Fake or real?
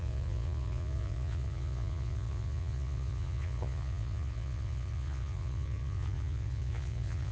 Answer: fake